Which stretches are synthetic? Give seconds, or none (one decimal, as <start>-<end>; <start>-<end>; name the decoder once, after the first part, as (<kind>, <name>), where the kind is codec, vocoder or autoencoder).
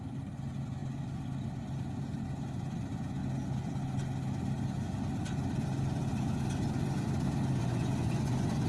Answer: 7.6-8.7 (vocoder, Vocos)